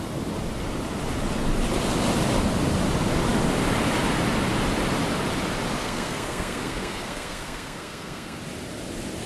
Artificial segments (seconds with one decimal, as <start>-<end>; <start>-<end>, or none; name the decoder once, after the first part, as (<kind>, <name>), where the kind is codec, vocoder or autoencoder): 5.8-8.4 (codec, SNAC)